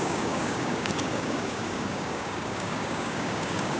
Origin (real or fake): fake